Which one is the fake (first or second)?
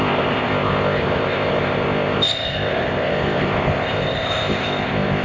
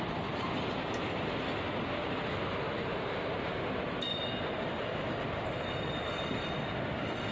first